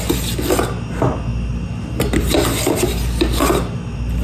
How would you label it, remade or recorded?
recorded